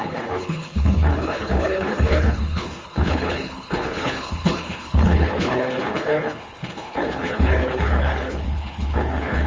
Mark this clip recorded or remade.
remade